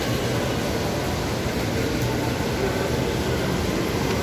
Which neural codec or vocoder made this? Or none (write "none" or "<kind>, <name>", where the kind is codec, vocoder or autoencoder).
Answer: none